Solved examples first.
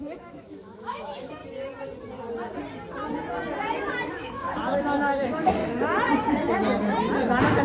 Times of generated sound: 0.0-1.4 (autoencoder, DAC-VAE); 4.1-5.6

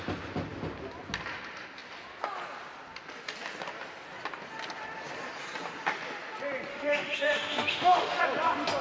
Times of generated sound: 6.7-8.2 (autoencoder, DAC-VAE)

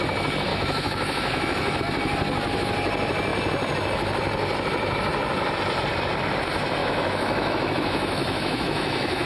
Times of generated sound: 0.5-1.8 (autoencoder, DAC-VAE); 6.8-9.3

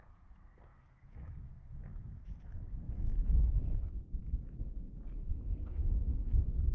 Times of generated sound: 0.7-4.2 (autoencoder, DAC-VAE)